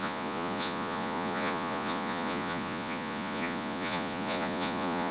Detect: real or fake fake